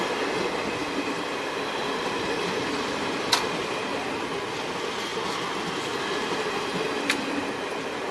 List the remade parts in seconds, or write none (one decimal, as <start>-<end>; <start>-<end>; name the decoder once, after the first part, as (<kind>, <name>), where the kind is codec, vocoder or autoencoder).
0.8-3.8 (vocoder, BigVGAN v2)